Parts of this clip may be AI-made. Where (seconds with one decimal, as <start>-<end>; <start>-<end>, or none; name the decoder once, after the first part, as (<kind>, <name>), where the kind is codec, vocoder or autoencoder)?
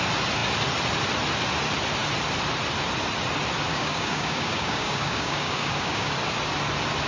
3.7-6.1 (codec, DAC)